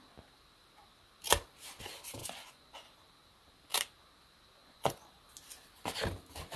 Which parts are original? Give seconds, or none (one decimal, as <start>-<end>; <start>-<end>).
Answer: 0.0-2.2; 2.9-4.6; 5.2-6.6